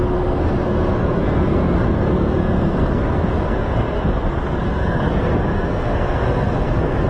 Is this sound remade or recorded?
remade